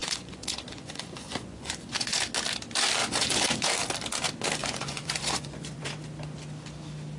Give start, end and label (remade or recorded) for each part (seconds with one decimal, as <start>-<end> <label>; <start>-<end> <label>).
0.0-2.2 remade; 2.2-3.0 recorded; 3.0-3.7 remade; 3.7-4.6 recorded; 4.6-5.9 remade; 5.9-7.2 recorded